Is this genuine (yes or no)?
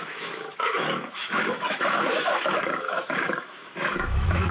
no